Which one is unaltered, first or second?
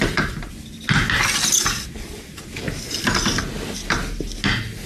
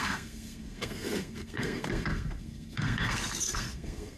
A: first